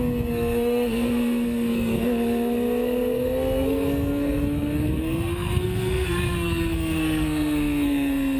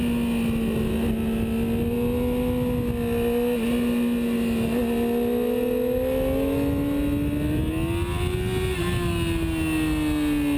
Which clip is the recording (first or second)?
second